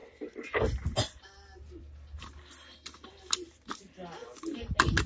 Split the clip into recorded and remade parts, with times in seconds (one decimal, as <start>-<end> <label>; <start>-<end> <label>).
0.0-5.1 recorded